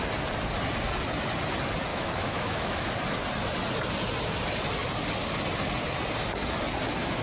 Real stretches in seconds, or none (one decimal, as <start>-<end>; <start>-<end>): 0.0-1.9; 2.9-7.2